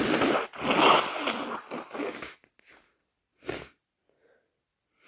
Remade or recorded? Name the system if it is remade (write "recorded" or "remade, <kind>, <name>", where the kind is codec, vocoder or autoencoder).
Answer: recorded